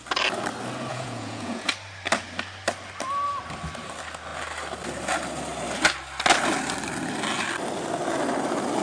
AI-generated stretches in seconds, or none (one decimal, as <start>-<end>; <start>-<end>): 0.9-1.7